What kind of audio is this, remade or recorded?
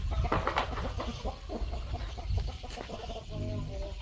recorded